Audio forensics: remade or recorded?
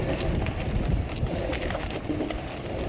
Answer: recorded